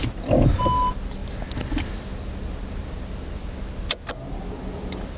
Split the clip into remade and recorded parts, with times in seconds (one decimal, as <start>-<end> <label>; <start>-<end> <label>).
0.0-5.2 recorded